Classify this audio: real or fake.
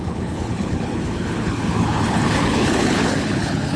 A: fake